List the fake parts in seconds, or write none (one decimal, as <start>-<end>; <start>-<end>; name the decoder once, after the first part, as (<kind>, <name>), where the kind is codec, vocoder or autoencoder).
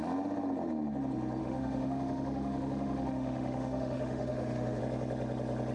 1.4-4.8 (autoencoder, DAC-VAE)